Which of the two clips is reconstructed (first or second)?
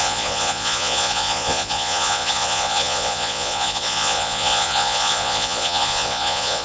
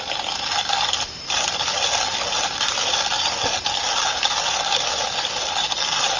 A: first